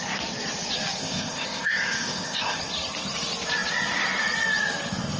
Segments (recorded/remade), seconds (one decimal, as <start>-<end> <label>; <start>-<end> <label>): 0.0-1.0 recorded; 1.0-2.6 remade; 2.6-5.2 recorded